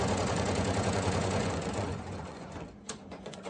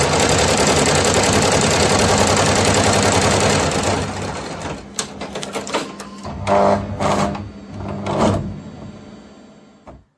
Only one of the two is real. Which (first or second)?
second